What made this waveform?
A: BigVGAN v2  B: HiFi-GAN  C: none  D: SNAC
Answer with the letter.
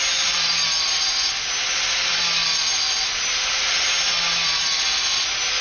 C